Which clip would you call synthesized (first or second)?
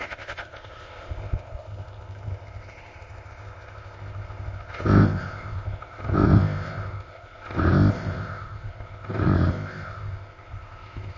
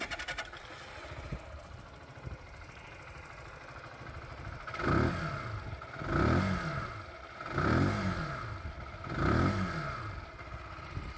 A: first